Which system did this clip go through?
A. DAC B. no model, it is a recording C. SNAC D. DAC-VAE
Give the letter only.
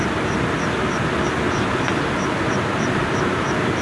B